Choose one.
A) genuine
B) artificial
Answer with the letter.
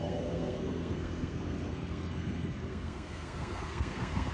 B